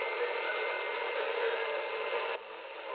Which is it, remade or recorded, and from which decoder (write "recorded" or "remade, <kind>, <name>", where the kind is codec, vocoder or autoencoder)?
recorded